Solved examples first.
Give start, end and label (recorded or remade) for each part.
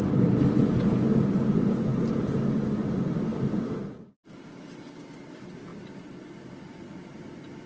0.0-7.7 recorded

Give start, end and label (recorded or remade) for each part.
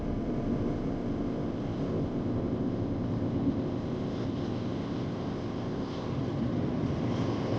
0.0-6.1 remade; 6.1-7.0 recorded; 7.0-7.6 remade